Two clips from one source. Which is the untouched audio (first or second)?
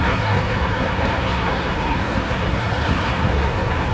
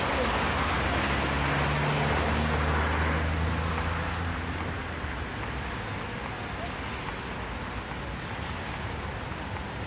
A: second